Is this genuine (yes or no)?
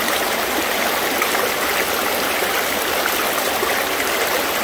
yes